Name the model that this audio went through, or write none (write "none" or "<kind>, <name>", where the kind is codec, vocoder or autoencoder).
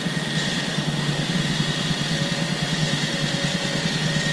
none